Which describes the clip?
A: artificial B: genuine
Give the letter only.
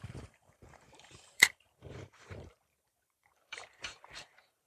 A